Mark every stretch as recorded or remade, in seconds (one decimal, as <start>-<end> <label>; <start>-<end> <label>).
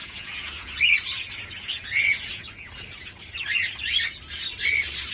0.0-3.1 remade; 3.1-5.1 recorded